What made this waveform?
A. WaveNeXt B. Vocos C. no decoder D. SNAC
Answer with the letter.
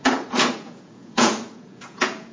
B